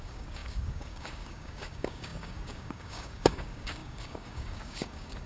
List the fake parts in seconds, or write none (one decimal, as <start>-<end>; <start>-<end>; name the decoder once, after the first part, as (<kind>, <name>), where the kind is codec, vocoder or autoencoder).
0.0-5.3 (codec, DAC)